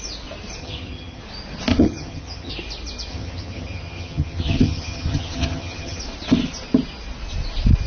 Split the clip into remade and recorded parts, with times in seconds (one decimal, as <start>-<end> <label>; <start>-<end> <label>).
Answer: 0.0-0.6 recorded; 0.6-1.2 remade; 1.2-1.7 recorded; 1.7-2.5 remade; 2.5-3.1 recorded; 3.1-6.0 remade; 6.0-7.9 recorded